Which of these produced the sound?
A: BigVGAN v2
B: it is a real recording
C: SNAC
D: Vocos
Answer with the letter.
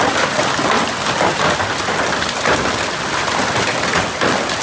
B